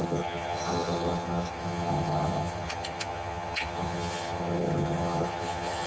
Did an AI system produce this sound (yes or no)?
yes